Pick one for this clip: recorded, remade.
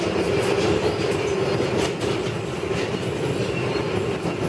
recorded